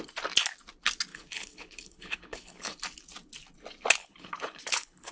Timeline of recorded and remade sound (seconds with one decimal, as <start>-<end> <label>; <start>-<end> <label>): 0.0-1.1 recorded; 1.1-2.8 remade; 2.8-4.0 recorded; 4.0-5.1 remade